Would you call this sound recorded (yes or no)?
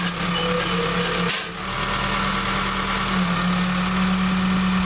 yes